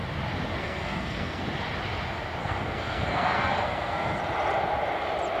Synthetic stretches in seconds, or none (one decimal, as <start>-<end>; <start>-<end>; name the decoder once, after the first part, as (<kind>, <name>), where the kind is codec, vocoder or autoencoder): 0.6-1.4 (codec, SNAC); 2.4-4.2